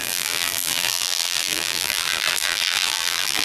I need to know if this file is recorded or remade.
remade